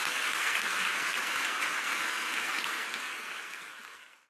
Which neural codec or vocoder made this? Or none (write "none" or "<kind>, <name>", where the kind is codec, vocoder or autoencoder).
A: codec, SNAC